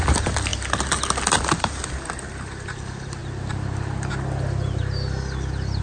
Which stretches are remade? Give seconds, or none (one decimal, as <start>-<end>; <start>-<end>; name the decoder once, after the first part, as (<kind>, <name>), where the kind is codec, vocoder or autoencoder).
0.0-0.5 (vocoder, BigVGAN v2); 1.6-4.8